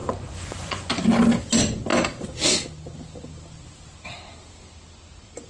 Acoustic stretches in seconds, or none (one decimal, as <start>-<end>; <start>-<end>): 0.9-5.5

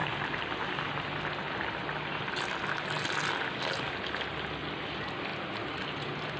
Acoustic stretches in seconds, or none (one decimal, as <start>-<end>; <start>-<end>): 2.1-5.3

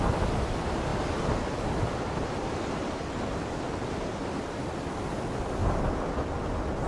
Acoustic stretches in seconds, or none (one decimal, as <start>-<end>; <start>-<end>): 0.0-0.9; 2.6-5.6; 6.2-6.9

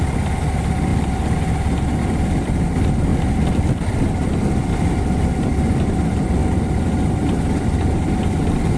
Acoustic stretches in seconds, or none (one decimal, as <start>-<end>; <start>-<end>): 0.0-8.8

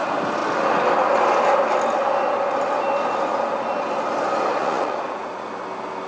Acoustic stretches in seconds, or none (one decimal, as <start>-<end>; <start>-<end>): 0.0-4.6; 5.5-6.1

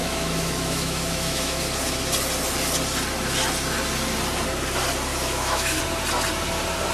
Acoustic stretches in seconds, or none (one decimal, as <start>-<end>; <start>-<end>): 1.6-5.1; 5.8-6.9